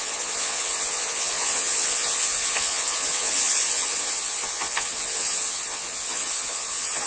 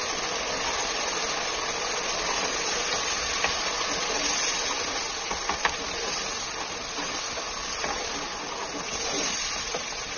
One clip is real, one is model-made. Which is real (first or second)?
second